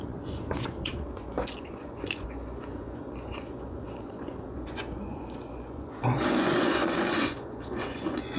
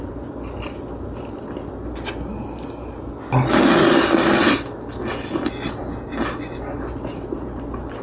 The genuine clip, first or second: second